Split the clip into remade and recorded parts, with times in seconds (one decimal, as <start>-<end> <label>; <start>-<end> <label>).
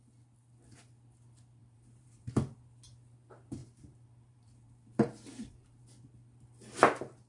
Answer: 0.0-1.6 recorded; 1.6-2.3 remade; 2.3-3.6 recorded; 3.6-5.8 remade; 5.8-7.3 recorded